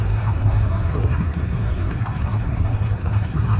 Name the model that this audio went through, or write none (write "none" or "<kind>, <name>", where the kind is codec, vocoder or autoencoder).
codec, SNAC